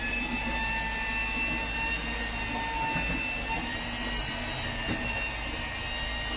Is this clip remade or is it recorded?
recorded